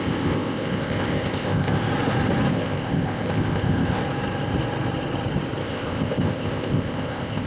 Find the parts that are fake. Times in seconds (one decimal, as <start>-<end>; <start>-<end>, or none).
0.0-1.9; 2.5-4.0; 5.6-7.5